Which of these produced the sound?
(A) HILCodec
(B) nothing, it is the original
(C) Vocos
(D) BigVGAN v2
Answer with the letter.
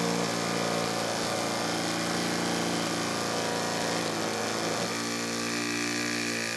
B